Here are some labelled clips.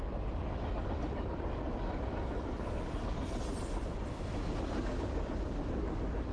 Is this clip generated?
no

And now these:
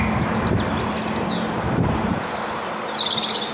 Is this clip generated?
no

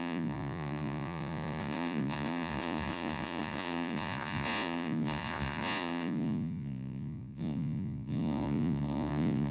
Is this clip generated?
yes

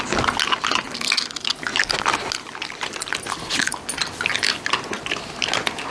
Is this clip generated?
no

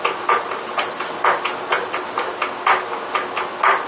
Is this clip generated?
no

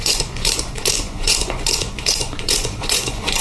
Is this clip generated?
yes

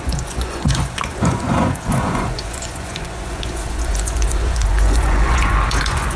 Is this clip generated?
yes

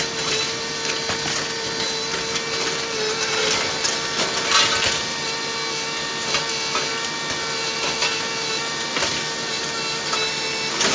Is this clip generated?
no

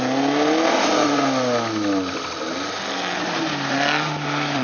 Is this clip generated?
no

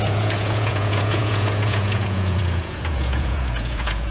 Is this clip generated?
yes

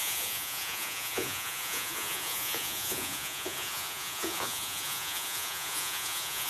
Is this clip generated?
yes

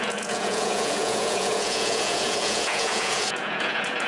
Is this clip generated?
yes